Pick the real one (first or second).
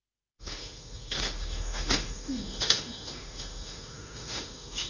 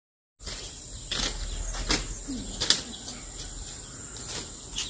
second